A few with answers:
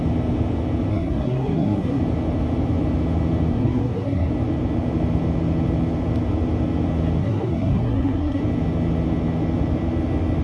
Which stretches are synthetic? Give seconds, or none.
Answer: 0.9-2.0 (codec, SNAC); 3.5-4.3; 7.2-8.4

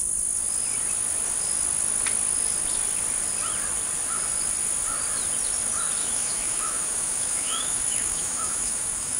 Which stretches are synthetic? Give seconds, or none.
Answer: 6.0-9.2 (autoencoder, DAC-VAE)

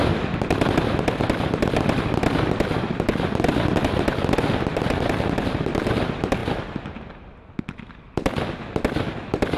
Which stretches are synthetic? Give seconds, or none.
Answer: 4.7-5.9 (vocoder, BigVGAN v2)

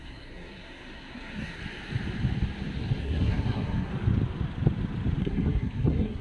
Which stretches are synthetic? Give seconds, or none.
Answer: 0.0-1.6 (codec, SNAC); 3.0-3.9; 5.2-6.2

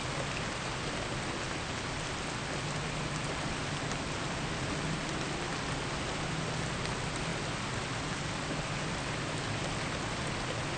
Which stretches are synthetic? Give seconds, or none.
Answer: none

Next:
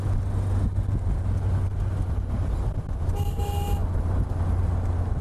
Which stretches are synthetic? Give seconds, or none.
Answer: none

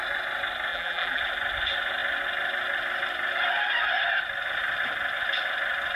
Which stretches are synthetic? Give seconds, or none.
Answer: 0.7-1.2 (vocoder, BigVGAN v2)

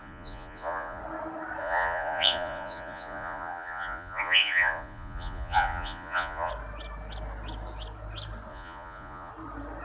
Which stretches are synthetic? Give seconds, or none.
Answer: 0.0-1.0 (vocoder, Vocos); 1.6-6.5; 8.5-9.3